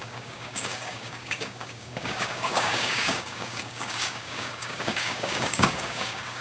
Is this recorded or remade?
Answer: remade